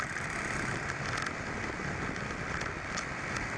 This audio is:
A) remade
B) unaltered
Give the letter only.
B